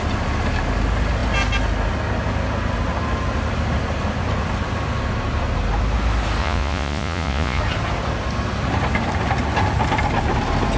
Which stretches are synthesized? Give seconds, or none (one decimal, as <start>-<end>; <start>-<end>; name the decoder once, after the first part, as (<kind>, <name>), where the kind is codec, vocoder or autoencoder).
6.4-7.6 (vocoder, Vocos)